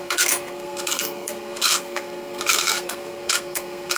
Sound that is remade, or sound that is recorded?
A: remade